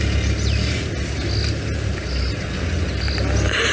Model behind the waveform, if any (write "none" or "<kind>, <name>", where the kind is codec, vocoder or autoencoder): none